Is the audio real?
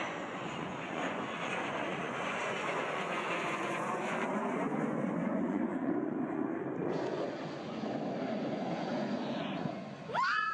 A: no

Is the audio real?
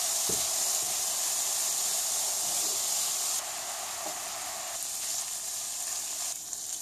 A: yes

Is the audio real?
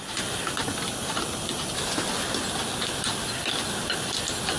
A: yes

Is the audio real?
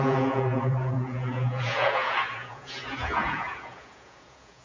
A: no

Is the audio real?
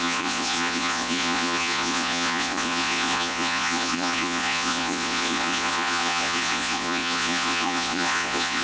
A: no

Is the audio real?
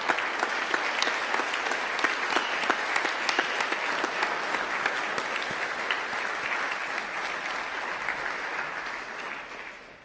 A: yes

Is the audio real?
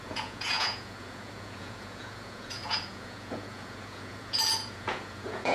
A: no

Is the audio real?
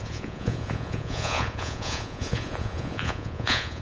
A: no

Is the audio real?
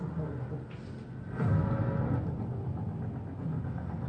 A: yes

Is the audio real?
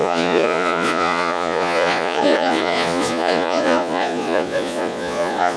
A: no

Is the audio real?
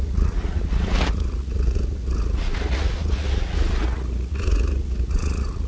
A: no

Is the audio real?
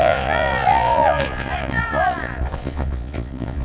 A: no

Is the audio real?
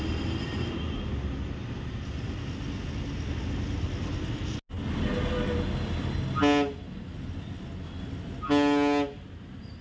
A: yes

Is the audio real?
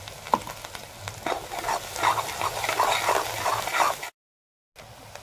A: yes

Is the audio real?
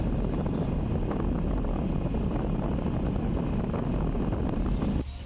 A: yes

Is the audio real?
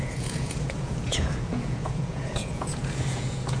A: no